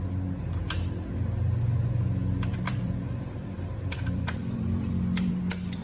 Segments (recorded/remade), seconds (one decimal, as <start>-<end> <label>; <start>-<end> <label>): 0.0-2.5 recorded; 2.5-5.3 remade; 5.3-5.8 recorded